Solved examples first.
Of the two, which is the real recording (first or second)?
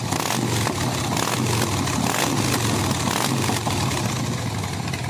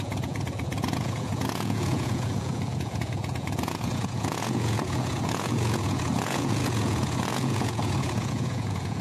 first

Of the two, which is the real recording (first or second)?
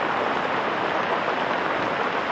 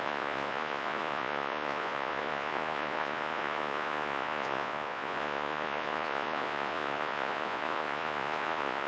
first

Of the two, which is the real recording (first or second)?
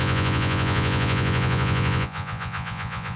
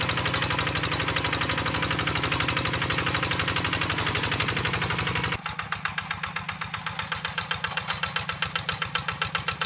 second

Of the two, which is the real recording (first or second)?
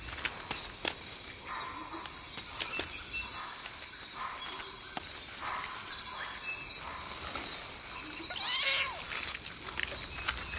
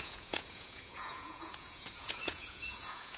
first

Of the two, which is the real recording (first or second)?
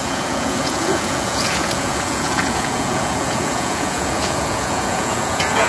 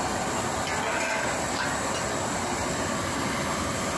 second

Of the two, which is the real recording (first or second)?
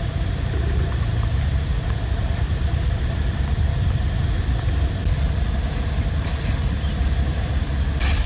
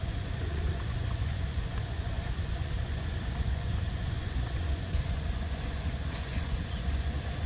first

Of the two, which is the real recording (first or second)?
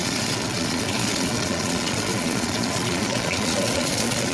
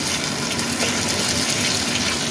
second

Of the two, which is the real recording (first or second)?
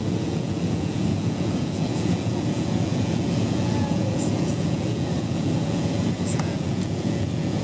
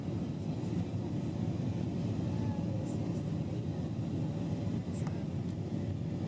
second